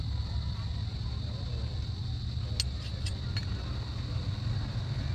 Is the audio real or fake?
real